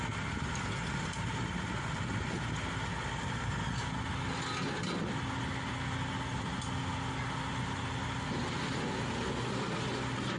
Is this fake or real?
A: real